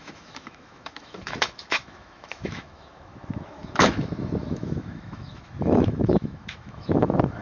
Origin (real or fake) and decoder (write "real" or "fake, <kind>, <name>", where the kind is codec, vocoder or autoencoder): fake, autoencoder, DAC-VAE